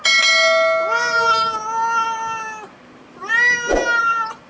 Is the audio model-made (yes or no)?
no